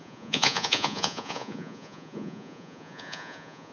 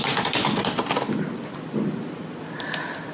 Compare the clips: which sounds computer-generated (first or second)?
first